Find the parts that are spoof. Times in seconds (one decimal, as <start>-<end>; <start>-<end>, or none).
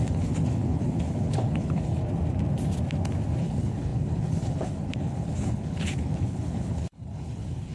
0.0-2.0; 3.4-7.7